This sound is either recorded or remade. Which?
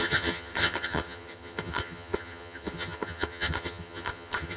remade